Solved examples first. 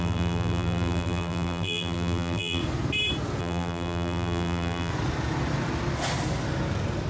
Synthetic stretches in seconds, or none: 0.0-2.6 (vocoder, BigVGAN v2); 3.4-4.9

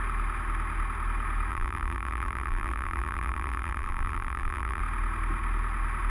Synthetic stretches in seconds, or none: 1.5-4.8 (vocoder, BigVGAN v2)

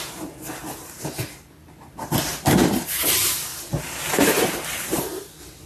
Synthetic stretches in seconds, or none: 1.6-5.0 (vocoder, BigVGAN v2)

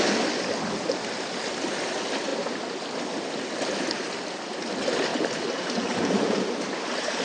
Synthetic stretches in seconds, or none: 5.1-7.2 (vocoder, BigVGAN v2)